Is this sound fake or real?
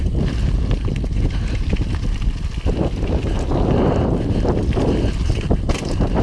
real